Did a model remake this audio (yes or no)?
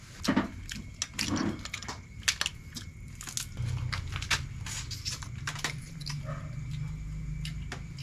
no